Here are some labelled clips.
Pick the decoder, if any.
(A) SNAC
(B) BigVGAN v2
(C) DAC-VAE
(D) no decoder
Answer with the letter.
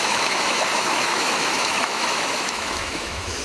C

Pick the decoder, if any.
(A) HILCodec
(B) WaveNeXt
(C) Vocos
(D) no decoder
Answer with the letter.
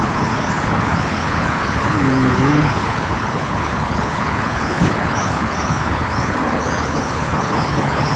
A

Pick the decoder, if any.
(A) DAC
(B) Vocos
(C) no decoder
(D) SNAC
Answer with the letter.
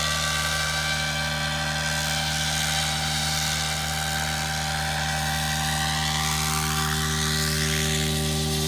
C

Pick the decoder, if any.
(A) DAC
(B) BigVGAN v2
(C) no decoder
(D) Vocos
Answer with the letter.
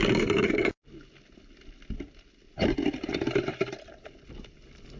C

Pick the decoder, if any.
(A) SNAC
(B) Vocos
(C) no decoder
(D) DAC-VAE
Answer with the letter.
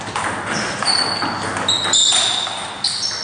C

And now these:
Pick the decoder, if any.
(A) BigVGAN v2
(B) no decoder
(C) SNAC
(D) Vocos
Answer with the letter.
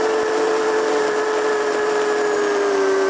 B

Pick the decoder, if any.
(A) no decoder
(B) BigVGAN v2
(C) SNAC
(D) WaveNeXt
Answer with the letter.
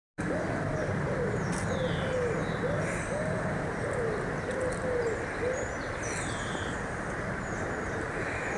A